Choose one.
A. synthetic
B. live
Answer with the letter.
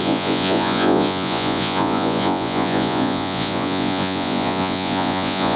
A